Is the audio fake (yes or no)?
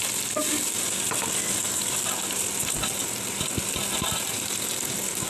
no